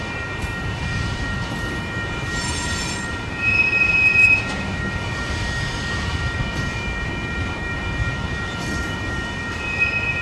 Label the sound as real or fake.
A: fake